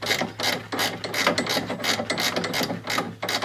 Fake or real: real